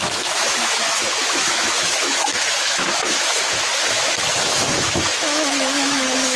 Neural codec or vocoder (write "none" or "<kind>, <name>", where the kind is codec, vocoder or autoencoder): autoencoder, DAC-VAE